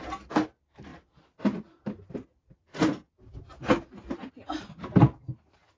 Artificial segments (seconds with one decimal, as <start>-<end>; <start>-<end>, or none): none